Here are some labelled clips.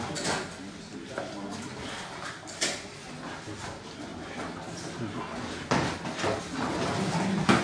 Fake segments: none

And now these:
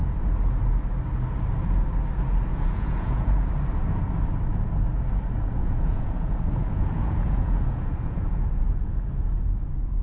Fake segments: 2.5-3.5 (vocoder, Vocos); 5.6-9.4

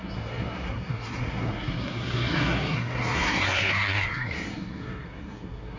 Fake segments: 0.0-5.8 (codec, SNAC)

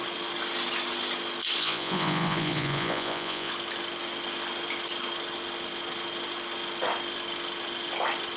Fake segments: 1.6-3.5 (vocoder, Vocos)

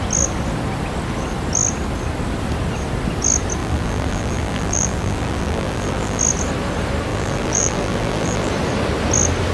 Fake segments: 3.6-6.2 (vocoder, BigVGAN v2); 7.1-8.5